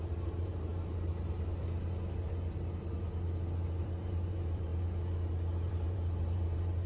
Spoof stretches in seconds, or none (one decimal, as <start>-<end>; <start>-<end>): 0.0-0.7; 3.8-4.7; 5.7-6.9